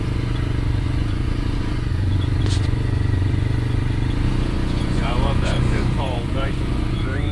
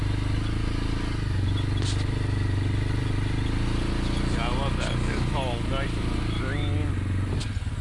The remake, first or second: first